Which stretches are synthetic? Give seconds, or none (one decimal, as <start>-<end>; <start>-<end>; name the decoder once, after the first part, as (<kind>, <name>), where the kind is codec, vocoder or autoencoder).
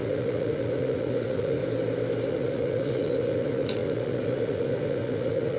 0.0-1.6 (vocoder, Vocos); 2.3-5.6